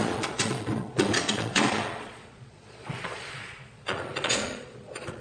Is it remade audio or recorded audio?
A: remade